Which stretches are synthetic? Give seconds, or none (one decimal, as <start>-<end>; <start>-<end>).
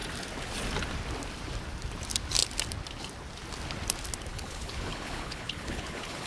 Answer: 4.3-6.3